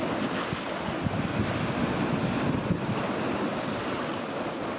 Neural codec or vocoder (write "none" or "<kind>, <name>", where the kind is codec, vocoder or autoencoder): none